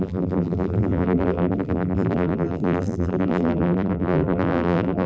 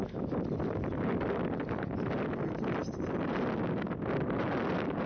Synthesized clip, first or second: first